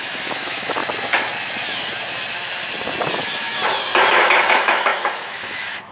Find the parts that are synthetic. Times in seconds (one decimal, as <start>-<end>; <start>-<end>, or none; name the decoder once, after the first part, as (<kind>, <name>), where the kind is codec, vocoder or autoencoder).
0.0-0.8 (autoencoder, DAC-VAE); 3.2-3.6; 4.5-5.9